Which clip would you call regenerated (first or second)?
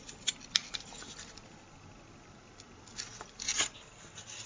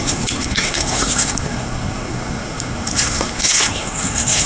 second